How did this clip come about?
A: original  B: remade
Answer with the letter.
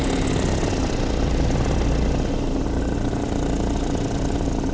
A